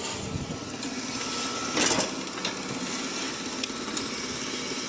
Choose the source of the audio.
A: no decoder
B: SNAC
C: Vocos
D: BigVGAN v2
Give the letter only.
A